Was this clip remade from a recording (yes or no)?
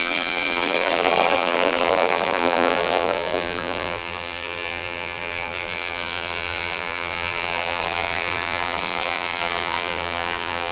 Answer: yes